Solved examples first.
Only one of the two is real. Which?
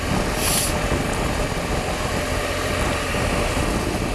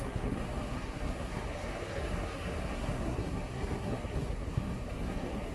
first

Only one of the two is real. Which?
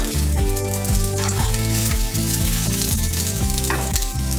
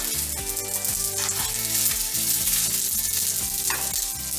second